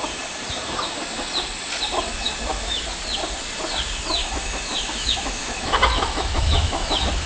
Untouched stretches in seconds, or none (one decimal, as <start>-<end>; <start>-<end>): 0.0-2.1; 2.9-4.2